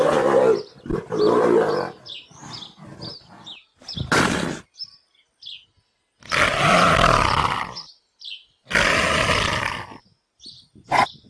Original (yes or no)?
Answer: yes